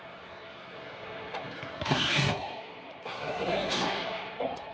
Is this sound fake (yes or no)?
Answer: yes